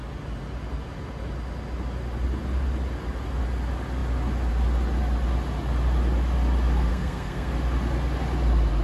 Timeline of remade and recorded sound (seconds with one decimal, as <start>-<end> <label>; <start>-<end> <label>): 0.0-6.9 recorded; 6.9-7.5 remade; 7.5-8.8 recorded